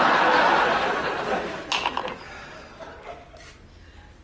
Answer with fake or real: real